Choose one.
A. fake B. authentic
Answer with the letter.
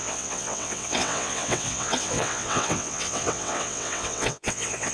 A